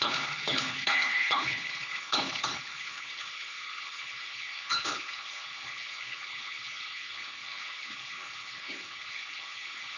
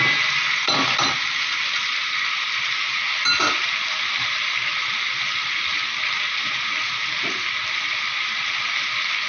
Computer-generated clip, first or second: first